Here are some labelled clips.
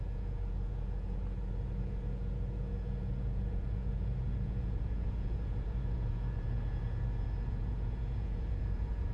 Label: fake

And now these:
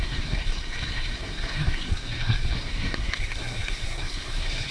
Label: fake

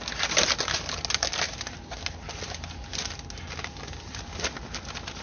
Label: real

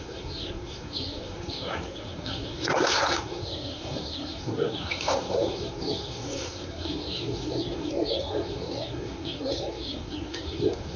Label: fake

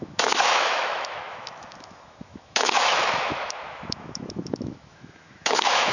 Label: fake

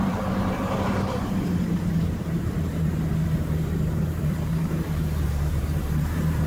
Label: fake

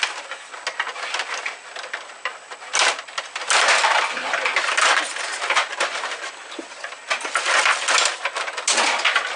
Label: real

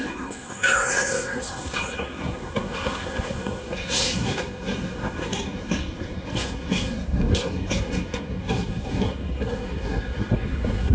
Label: fake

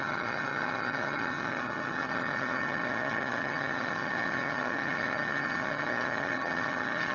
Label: fake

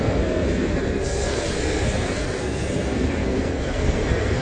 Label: fake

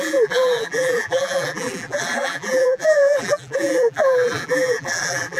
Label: fake